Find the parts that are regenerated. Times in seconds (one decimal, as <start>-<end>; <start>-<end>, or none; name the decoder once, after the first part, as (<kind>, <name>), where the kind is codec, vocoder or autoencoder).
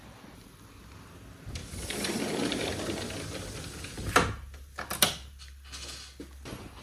1.6-2.7 (vocoder, BigVGAN v2)